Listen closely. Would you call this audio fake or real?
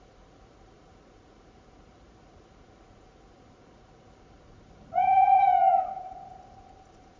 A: fake